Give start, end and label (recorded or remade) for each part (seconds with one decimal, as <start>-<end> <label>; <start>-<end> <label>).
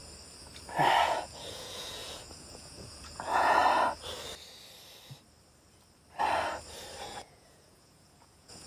0.0-1.0 recorded; 1.0-3.6 remade; 3.6-7.0 recorded; 7.0-8.7 remade